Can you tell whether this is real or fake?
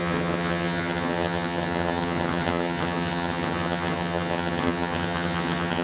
fake